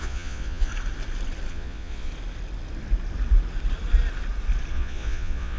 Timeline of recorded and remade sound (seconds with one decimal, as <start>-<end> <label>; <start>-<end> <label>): 0.0-0.7 remade; 0.7-1.5 recorded; 1.5-2.1 remade; 2.1-4.7 recorded; 4.7-5.6 remade